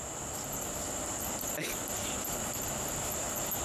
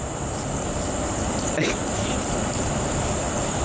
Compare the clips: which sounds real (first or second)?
first